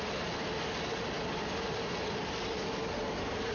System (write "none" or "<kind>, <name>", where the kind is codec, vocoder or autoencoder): none